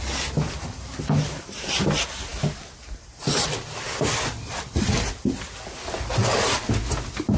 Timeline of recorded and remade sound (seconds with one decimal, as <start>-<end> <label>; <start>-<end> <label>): 0.0-7.4 recorded

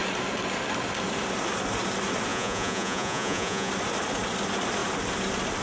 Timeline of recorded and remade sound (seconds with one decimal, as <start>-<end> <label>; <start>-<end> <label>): 0.0-2.3 recorded; 2.3-3.7 remade; 3.7-5.6 recorded

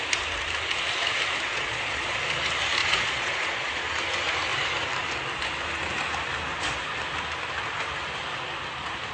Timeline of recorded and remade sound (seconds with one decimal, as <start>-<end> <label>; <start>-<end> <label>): 0.0-1.5 recorded; 1.5-2.2 remade; 2.2-2.8 recorded; 2.8-3.8 remade; 3.8-9.1 recorded

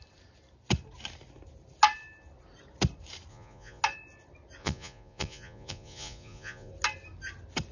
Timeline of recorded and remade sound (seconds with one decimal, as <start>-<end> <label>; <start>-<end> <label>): 0.0-3.3 recorded; 3.3-3.8 remade; 3.8-4.6 recorded; 4.6-6.7 remade; 6.7-7.7 recorded